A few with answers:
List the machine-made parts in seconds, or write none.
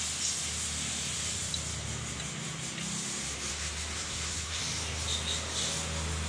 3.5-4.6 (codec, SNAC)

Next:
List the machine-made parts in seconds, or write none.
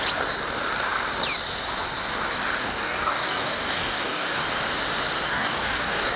2.6-4.4 (codec, DAC); 5.3-6.2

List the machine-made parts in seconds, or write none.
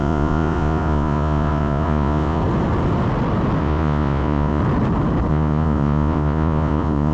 0.0-2.4 (vocoder, Vocos); 3.6-4.6; 5.3-7.1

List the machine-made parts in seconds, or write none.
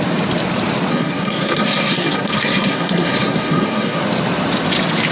0.9-4.0 (codec, SNAC)